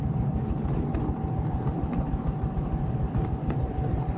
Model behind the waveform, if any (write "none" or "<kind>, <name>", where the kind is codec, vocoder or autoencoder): none